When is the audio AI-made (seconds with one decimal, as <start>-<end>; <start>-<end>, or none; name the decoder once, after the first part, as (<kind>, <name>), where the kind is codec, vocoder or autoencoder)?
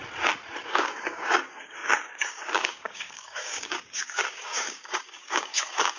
0.6-6.0 (codec, DAC)